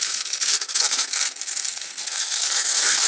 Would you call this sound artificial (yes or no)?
yes